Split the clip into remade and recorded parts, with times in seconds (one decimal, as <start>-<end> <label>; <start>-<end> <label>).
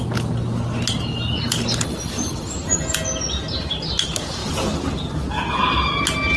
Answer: 0.0-6.4 recorded